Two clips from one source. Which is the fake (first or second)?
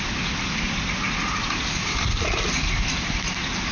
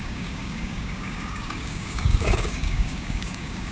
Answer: second